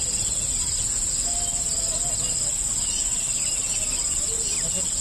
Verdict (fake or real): real